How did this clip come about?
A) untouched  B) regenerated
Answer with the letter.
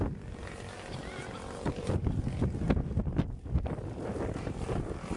A